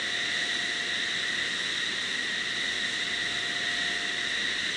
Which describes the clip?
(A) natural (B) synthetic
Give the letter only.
A